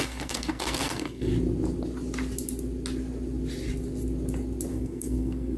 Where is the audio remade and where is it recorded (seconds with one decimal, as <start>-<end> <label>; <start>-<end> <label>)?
0.0-1.3 remade; 1.3-4.7 recorded; 4.7-5.6 remade